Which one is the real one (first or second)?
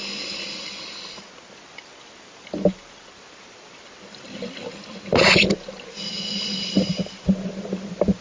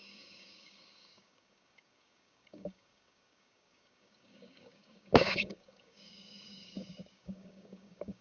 first